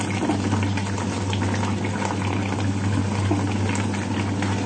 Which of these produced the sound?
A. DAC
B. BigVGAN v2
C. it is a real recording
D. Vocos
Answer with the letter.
C